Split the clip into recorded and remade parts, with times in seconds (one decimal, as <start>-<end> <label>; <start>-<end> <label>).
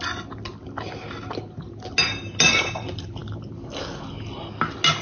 0.0-5.0 recorded